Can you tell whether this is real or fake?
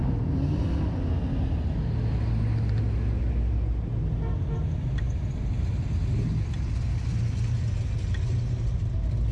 real